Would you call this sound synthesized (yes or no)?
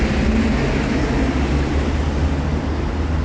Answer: no